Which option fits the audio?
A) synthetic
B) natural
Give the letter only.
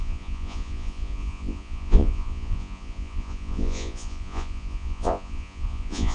A